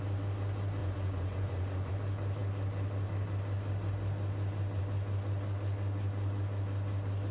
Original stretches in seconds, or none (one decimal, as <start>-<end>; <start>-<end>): 0.0-0.8; 1.9-7.3